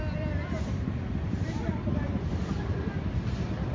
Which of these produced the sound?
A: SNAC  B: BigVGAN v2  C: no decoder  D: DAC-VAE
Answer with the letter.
C